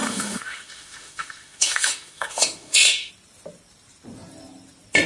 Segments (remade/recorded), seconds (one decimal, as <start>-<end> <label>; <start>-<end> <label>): 0.0-3.1 remade; 3.1-5.1 recorded